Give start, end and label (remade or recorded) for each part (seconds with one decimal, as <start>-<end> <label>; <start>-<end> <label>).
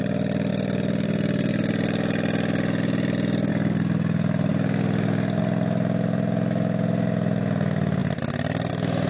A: 0.0-9.1 recorded